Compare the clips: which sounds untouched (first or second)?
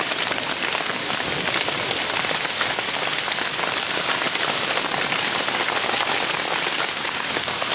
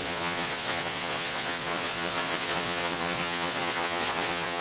first